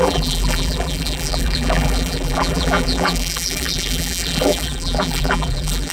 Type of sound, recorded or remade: remade